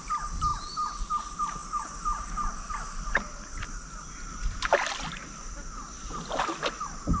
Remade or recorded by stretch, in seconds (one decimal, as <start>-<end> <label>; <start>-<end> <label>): 0.0-0.5 recorded; 0.5-1.2 remade; 1.2-7.2 recorded